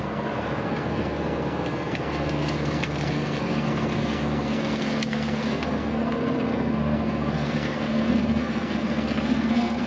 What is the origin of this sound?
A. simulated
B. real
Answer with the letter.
A